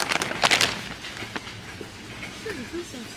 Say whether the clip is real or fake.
real